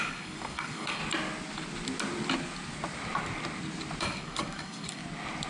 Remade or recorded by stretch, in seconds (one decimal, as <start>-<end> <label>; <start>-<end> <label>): 0.0-1.0 remade; 1.0-4.0 recorded; 4.0-5.0 remade; 5.0-5.5 recorded

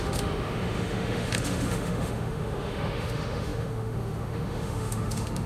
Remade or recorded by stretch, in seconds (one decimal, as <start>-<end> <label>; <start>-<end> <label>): 0.0-5.5 remade

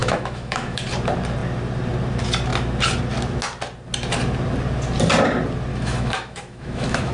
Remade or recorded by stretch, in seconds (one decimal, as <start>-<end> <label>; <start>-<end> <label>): 0.0-0.8 remade; 0.8-5.7 recorded; 5.7-7.1 remade

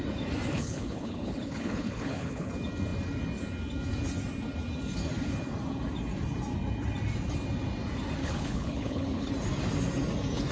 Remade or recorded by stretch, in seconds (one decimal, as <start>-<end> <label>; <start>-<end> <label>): 0.0-0.5 recorded; 0.5-2.5 remade; 2.5-8.2 recorded; 8.2-9.3 remade; 9.3-10.5 recorded

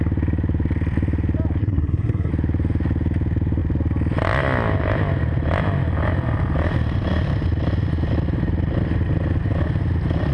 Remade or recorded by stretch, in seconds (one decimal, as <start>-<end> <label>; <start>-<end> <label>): 0.0-1.6 recorded; 1.6-2.3 remade; 2.3-10.3 recorded

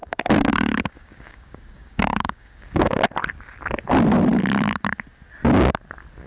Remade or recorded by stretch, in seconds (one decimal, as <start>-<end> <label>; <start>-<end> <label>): 0.0-3.0 remade; 3.0-6.3 recorded

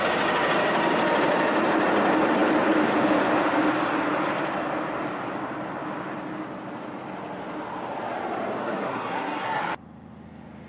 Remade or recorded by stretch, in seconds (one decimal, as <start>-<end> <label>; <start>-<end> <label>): 0.0-8.6 recorded; 8.6-9.6 remade; 9.6-10.7 recorded

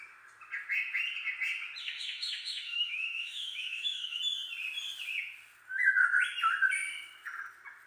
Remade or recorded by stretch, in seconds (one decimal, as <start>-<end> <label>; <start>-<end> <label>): 0.0-1.8 recorded; 1.8-4.2 remade; 4.2-7.9 recorded